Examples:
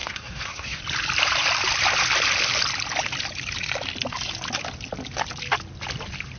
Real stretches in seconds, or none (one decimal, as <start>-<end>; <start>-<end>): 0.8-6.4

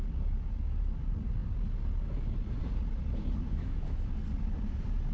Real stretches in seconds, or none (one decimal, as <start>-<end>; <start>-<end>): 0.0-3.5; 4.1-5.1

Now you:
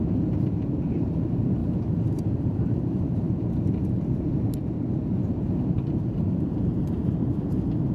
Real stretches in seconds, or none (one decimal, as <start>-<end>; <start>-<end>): none

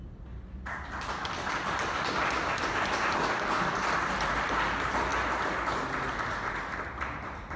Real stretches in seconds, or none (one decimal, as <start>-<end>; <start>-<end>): 0.0-7.6